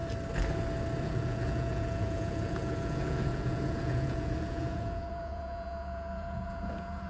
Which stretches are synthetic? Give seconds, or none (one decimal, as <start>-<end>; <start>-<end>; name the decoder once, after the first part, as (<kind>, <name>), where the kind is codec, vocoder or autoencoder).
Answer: 1.0-7.1 (vocoder, Vocos)